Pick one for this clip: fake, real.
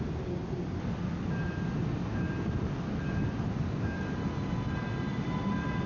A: real